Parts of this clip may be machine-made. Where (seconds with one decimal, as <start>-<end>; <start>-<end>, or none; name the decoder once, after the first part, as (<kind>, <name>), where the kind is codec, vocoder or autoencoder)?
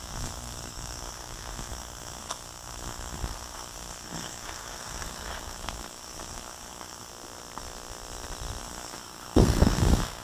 0.0-7.1 (codec, SNAC); 8.6-10.2